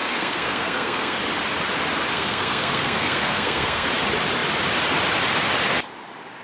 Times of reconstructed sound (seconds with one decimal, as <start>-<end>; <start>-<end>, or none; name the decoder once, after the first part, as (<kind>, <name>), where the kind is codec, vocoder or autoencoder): 0.0-1.2 (codec, SNAC); 2.1-3.9